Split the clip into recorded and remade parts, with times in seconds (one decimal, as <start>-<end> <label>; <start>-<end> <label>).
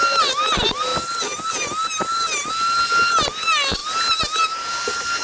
0.0-5.2 recorded